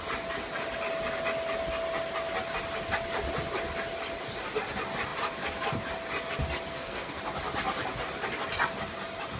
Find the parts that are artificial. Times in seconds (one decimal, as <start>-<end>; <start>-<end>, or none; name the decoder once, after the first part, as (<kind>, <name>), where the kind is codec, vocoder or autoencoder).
6.7-7.2 (codec, SNAC)

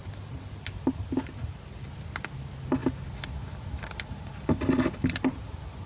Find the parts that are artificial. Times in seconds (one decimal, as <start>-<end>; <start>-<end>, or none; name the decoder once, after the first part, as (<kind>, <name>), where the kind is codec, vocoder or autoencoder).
none

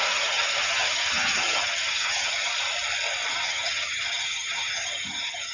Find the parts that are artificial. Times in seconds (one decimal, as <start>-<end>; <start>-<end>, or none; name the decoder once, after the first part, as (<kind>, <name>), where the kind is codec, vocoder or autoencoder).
0.0-2.5 (vocoder, HiFi-GAN); 3.3-5.5

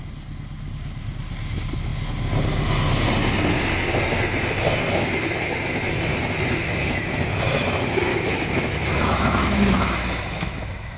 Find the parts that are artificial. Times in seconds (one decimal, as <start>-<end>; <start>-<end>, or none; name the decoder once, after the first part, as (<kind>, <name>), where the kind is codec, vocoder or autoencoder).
8.1-11.0 (autoencoder, DAC-VAE)

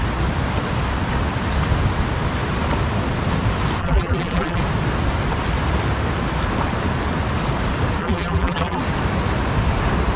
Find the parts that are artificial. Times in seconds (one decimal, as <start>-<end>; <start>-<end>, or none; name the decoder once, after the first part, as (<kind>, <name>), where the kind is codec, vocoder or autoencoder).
3.8-4.6 (vocoder, BigVGAN v2); 8.0-8.8

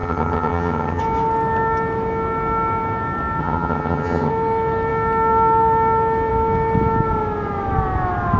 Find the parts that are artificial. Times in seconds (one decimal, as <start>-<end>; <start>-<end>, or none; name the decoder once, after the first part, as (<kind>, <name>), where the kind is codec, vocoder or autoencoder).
0.0-1.0 (vocoder, HiFi-GAN); 3.4-4.3

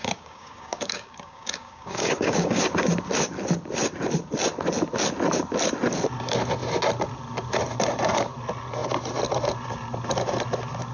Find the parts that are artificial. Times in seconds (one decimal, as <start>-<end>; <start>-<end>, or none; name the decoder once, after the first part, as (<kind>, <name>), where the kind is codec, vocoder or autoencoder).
0.0-2.6 (codec, DAC)

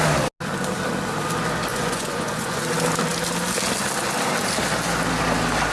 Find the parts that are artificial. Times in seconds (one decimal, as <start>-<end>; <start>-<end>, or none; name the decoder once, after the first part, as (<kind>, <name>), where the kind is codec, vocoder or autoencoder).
1.7-2.6 (vocoder, Vocos)